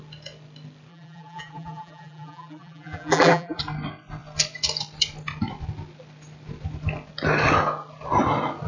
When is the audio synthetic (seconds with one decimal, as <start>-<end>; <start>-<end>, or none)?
0.9-3.6